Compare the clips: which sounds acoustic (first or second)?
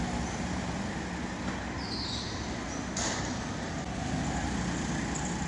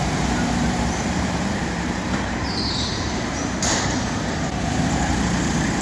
first